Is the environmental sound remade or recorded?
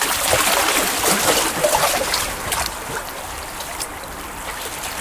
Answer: recorded